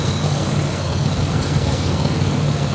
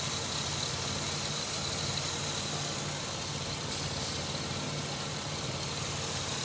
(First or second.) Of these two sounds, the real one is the second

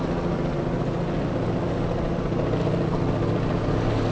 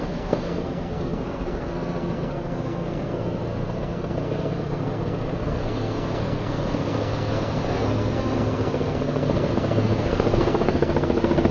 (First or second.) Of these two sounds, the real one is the first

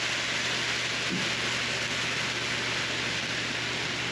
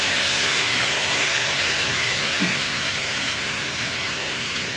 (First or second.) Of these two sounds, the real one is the first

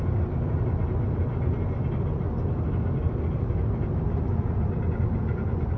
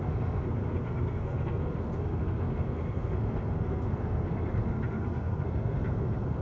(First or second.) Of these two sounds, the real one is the first